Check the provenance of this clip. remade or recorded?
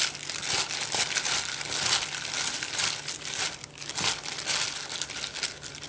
recorded